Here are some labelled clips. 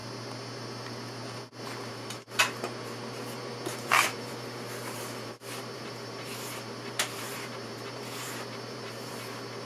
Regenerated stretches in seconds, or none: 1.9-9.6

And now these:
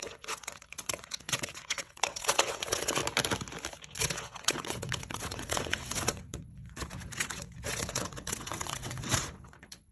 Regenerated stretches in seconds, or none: 0.0-3.0; 4.0-9.9

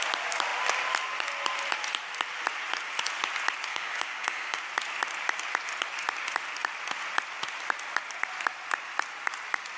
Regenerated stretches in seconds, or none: 3.7-4.6

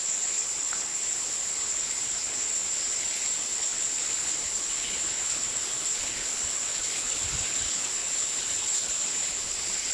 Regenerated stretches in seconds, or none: 0.0-9.9

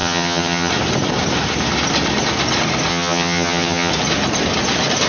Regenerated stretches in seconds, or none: 0.0-0.7; 2.9-3.9

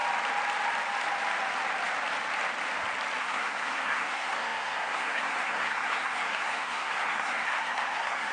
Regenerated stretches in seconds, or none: 3.2-8.3

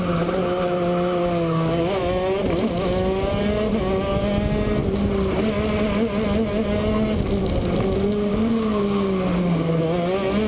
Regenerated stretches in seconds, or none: 1.2-2.0; 8.3-9.8